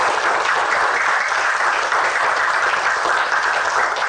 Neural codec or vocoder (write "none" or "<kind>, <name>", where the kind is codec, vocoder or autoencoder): none